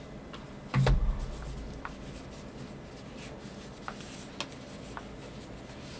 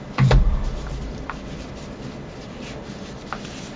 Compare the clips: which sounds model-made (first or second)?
second